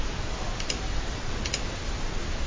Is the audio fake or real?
real